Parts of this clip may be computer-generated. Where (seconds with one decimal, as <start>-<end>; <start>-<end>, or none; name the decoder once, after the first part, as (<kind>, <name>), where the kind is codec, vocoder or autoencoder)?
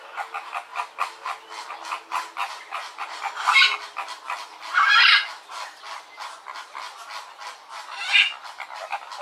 2.4-3.2 (vocoder, BigVGAN v2)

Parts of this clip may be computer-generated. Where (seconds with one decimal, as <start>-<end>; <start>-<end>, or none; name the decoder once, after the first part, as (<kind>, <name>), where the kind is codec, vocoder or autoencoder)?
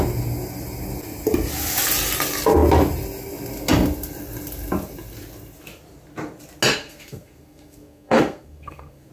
6.7-9.1 (codec, SNAC)